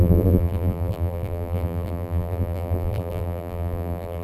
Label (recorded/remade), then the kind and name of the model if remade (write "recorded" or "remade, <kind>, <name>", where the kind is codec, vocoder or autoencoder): remade, vocoder, BigVGAN v2